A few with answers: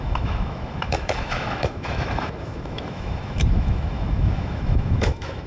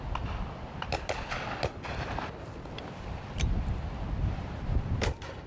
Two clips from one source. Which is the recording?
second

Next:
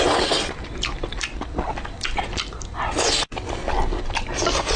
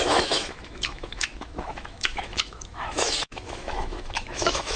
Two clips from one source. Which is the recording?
first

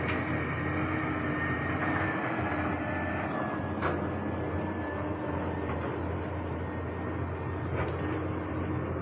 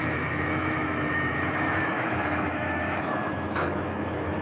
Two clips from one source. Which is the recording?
first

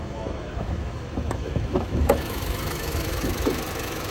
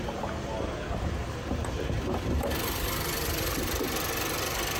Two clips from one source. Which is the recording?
second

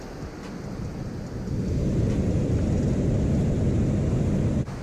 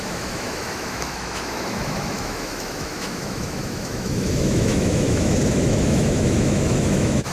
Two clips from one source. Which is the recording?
first